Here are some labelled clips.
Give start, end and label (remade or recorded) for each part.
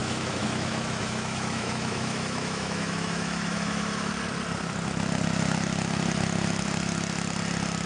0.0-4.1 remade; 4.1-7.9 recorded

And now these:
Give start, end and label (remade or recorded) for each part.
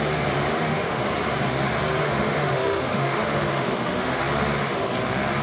0.0-0.5 recorded; 0.5-1.0 remade; 1.0-2.0 recorded; 2.0-4.2 remade; 4.2-5.4 recorded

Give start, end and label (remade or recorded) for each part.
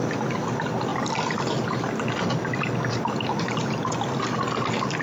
0.0-5.0 recorded